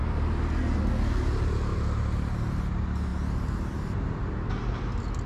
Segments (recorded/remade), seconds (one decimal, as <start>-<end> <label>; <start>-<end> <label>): 0.0-1.7 recorded; 1.7-2.2 remade; 2.2-5.3 recorded